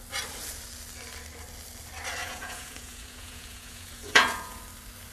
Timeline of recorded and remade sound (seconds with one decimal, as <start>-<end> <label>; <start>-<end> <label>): 0.0-2.2 recorded; 2.2-4.6 remade; 4.6-5.1 recorded

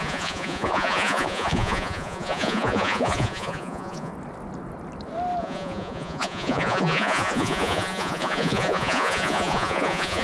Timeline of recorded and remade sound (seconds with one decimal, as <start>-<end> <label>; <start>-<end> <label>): 0.0-4.1 remade; 4.1-5.4 recorded; 5.4-10.2 remade

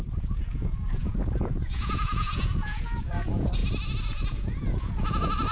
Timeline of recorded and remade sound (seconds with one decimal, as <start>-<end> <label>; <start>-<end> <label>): 0.0-3.6 remade; 3.6-4.1 recorded; 4.1-5.5 remade

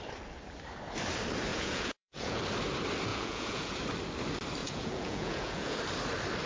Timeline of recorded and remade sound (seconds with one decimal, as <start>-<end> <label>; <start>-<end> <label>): 0.0-1.5 recorded; 1.5-2.4 remade; 2.4-3.1 recorded; 3.1-3.8 remade; 3.8-4.6 recorded; 4.6-5.8 remade; 5.8-6.5 recorded